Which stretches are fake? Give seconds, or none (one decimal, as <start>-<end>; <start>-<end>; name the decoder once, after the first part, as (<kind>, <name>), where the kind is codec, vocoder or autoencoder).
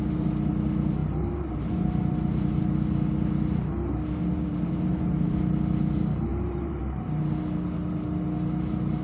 1.0-2.6 (vocoder, BigVGAN v2); 4.5-5.4; 6.3-6.8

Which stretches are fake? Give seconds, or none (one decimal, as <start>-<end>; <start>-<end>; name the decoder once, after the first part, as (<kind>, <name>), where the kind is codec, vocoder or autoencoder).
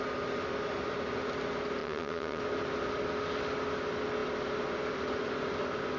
1.8-2.4 (vocoder, WaveNeXt)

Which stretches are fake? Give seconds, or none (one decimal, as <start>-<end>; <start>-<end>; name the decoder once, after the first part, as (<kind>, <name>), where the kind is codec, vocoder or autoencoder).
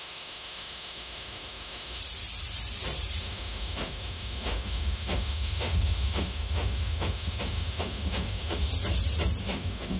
0.0-2.0 (autoencoder, DAC-VAE); 3.2-8.7; 9.4-10.0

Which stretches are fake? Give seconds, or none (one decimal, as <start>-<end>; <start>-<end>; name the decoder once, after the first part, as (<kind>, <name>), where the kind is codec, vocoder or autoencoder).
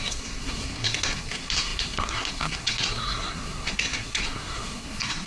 0.0-5.3 (codec, SNAC)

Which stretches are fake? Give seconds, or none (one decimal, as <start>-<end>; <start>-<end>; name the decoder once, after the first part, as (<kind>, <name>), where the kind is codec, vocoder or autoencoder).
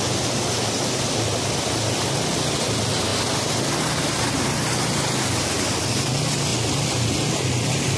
none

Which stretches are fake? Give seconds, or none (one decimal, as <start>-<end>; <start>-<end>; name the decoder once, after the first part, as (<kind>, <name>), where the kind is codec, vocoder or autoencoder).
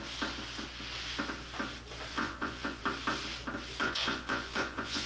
2.1-2.8 (vocoder, Vocos); 3.8-5.1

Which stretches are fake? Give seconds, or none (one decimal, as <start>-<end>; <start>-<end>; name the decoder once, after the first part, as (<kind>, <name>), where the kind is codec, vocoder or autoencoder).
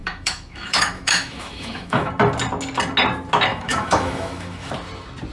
0.0-2.1 (autoencoder, DAC-VAE); 3.5-4.7